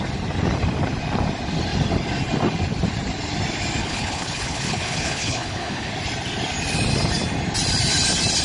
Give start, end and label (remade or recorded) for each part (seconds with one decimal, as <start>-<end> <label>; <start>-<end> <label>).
0.0-3.8 recorded; 3.8-5.9 remade; 5.9-8.4 recorded